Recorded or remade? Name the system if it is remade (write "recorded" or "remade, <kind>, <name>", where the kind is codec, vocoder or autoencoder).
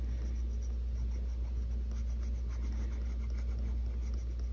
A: recorded